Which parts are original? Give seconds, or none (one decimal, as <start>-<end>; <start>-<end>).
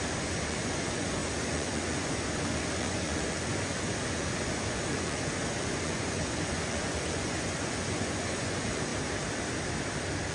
8.9-10.3